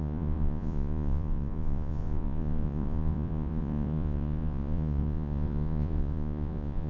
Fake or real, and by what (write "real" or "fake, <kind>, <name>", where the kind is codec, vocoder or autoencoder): fake, vocoder, Vocos